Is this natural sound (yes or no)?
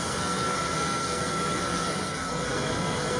no